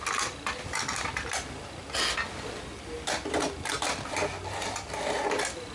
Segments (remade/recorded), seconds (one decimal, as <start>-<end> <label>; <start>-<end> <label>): 0.0-5.7 recorded